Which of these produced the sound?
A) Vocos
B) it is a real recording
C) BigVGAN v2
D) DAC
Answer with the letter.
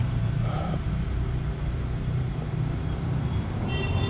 C